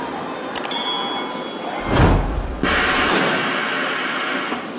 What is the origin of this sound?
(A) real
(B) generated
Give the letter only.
A